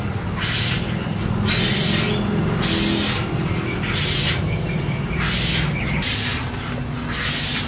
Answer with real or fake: real